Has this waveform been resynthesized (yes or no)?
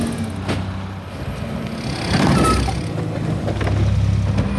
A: no